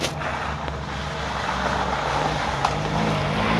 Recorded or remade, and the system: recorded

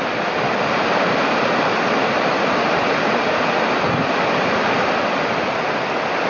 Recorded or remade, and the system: recorded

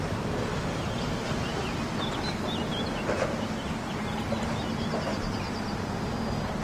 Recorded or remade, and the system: recorded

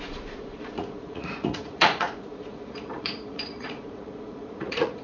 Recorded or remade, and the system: remade, vocoder, Vocos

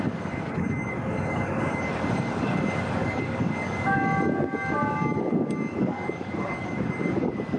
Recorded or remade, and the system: remade, codec, DAC